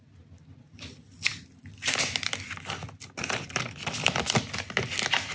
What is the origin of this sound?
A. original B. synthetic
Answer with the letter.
A